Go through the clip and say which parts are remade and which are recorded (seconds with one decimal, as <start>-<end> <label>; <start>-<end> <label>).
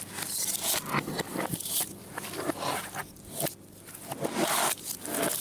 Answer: 0.0-1.3 recorded; 1.3-2.3 remade; 2.3-5.4 recorded